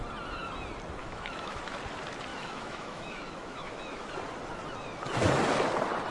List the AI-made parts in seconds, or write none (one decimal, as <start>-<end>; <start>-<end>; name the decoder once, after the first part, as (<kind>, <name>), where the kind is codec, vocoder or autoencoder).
1.0-1.8 (autoencoder, DAC-VAE); 2.3-4.1